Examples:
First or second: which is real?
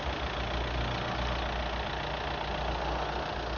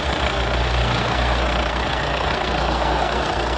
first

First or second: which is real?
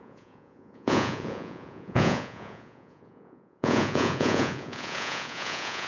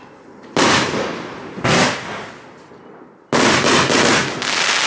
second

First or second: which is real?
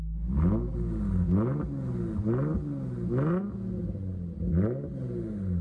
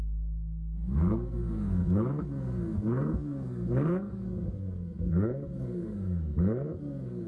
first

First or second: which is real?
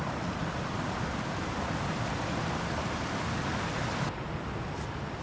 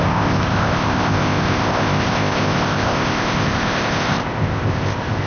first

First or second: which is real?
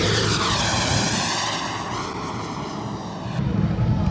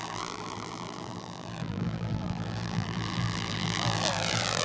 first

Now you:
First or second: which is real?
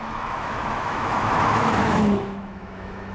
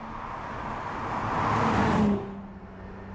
second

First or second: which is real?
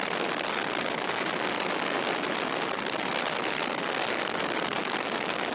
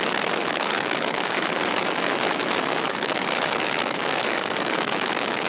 first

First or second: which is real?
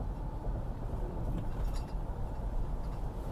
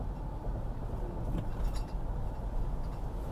second